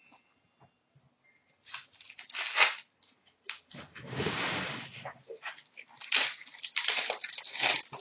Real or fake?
real